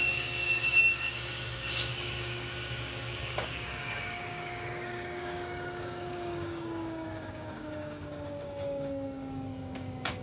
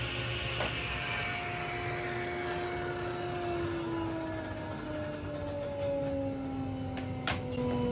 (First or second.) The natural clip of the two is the second